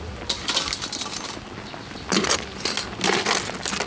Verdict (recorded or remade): recorded